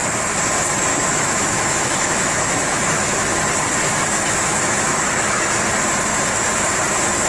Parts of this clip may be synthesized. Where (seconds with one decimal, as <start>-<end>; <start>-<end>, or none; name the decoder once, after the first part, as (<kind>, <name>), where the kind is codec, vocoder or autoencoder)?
0.9-3.4 (autoencoder, DAC-VAE); 3.8-5.6